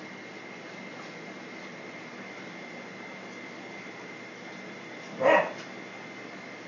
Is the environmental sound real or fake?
real